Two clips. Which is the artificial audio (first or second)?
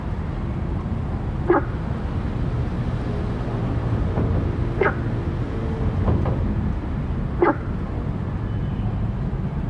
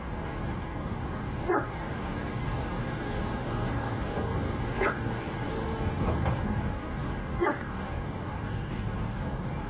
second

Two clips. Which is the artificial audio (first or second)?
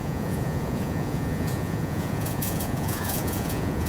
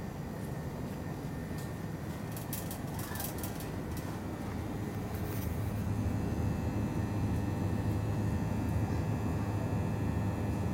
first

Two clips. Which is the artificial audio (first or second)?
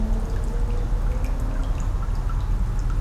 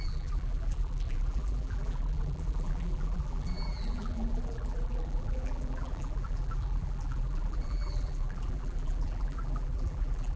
second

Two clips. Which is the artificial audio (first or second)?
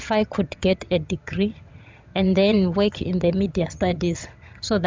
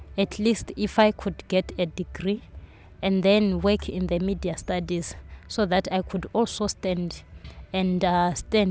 first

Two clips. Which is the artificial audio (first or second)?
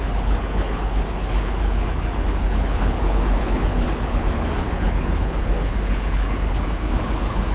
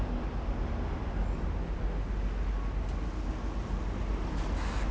first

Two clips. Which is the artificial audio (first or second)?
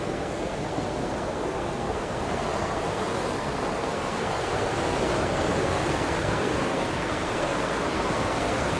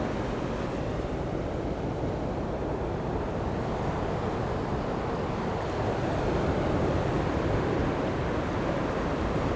first